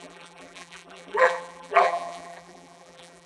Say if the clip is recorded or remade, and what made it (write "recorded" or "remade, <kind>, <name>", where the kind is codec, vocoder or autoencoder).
remade, vocoder, BigVGAN v2